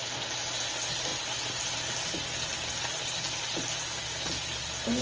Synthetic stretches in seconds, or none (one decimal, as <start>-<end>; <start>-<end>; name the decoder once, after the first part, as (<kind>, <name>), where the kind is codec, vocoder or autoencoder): none